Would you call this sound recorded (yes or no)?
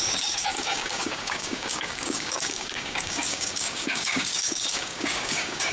no